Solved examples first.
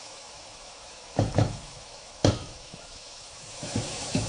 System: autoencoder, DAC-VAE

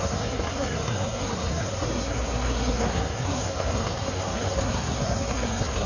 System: codec, SNAC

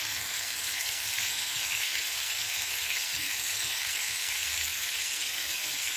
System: codec, SNAC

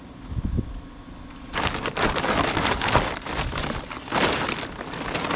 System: none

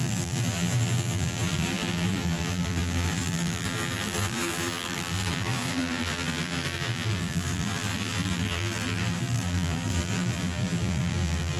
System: vocoder, BigVGAN v2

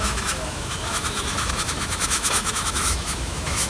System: autoencoder, DAC-VAE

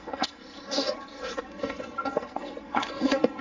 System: codec, SNAC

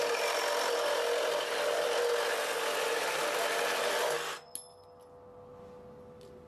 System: none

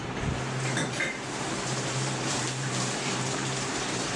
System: vocoder, BigVGAN v2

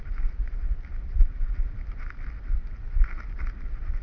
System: none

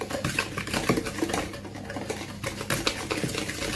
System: none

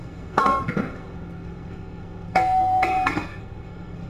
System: codec, SNAC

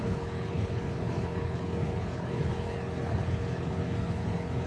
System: codec, HILCodec